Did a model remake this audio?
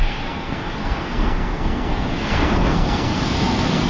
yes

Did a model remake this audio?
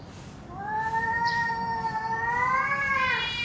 yes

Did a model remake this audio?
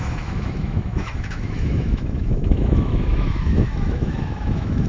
yes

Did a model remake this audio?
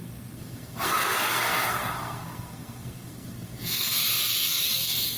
yes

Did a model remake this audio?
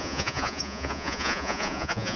yes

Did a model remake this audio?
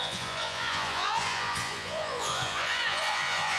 yes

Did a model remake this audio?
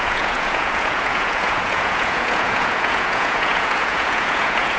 yes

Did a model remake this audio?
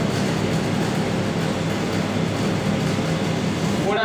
no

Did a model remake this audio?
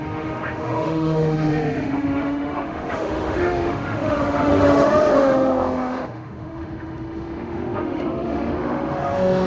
yes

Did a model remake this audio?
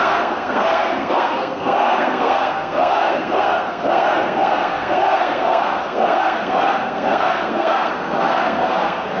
yes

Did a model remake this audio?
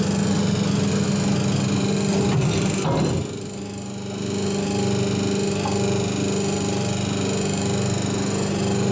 no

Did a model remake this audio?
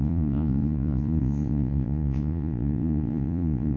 yes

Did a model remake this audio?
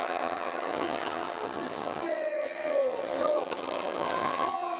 yes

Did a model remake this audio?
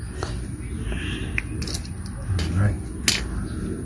no